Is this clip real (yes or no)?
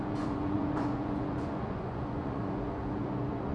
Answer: no